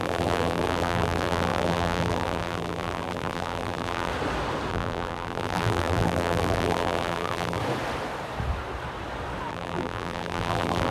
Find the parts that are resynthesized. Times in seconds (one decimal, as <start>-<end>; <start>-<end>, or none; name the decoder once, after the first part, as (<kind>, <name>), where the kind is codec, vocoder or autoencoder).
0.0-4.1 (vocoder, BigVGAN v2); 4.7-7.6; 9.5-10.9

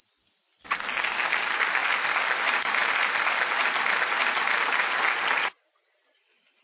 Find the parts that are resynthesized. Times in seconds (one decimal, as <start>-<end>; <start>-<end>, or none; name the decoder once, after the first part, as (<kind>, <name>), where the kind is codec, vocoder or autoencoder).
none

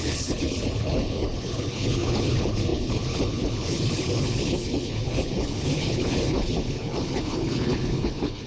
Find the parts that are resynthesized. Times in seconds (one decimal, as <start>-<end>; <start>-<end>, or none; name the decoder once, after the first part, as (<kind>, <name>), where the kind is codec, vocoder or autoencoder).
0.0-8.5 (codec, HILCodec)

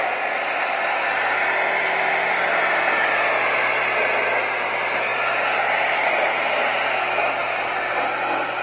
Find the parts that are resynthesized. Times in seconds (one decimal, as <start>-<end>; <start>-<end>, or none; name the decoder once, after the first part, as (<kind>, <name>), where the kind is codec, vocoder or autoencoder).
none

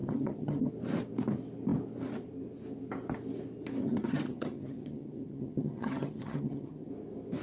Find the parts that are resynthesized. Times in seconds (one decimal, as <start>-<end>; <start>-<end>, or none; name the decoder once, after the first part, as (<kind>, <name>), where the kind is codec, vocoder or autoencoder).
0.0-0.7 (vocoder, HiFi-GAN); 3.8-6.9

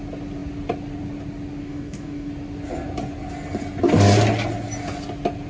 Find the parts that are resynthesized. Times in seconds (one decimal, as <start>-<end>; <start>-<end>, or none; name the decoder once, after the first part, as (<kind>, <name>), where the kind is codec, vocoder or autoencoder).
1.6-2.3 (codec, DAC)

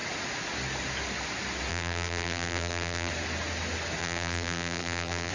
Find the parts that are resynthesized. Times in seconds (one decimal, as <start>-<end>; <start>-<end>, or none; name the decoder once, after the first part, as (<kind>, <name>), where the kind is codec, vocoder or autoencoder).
1.7-3.1 (vocoder, BigVGAN v2); 4.0-5.3

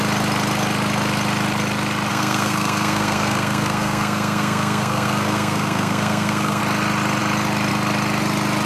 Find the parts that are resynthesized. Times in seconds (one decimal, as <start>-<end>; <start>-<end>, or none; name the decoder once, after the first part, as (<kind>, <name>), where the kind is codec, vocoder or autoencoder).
2.1-6.6 (codec, SNAC)